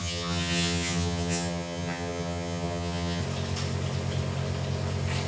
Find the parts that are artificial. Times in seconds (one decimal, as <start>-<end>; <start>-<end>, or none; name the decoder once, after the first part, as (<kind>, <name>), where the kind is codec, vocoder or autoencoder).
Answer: 0.0-3.2 (vocoder, HiFi-GAN)